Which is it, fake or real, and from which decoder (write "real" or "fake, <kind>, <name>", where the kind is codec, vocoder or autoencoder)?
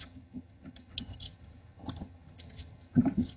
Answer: fake, vocoder, HiFi-GAN